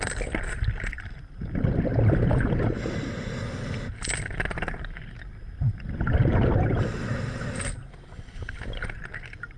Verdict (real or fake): real